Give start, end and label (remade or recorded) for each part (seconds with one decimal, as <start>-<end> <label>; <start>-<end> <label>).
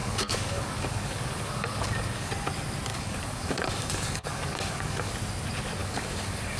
0.0-2.3 remade; 2.3-2.9 recorded; 2.9-5.1 remade; 5.1-5.8 recorded; 5.8-6.6 remade